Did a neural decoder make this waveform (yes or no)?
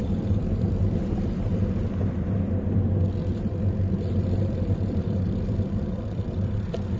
yes